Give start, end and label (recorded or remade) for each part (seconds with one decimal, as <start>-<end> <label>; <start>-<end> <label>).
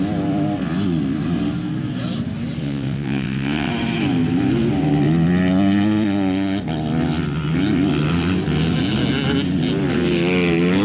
0.0-2.6 recorded; 2.6-3.7 remade; 3.7-10.8 recorded